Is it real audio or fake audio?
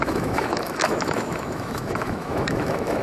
fake